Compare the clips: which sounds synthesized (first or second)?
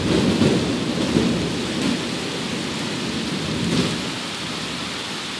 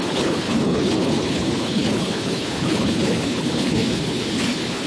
second